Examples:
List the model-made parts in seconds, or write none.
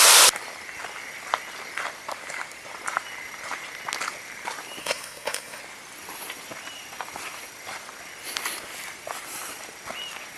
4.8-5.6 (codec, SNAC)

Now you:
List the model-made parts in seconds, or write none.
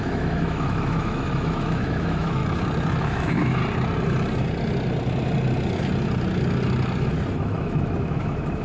0.0-2.4 (autoencoder, DAC-VAE); 3.0-3.6; 7.4-8.6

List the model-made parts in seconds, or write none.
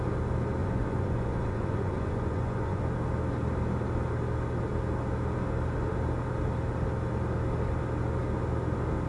0.6-2.8 (vocoder, Vocos)